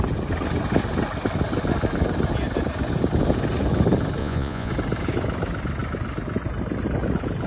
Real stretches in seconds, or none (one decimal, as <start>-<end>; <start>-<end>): 0.0-4.2; 4.7-7.5